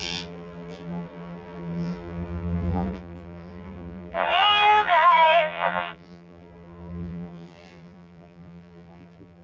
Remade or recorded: remade